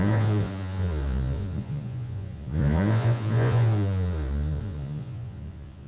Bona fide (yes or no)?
no